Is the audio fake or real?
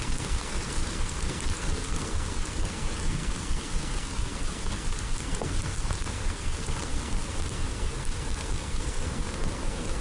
fake